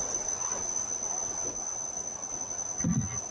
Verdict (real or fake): fake